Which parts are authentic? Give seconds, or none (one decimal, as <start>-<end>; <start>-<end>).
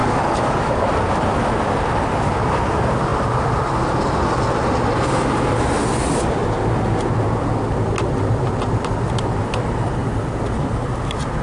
0.8-11.4